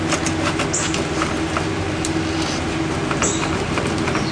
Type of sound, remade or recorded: recorded